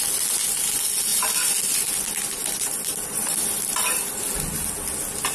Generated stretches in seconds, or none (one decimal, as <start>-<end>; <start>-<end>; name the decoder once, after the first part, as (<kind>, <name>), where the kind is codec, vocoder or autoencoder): 1.1-4.2 (vocoder, BigVGAN v2)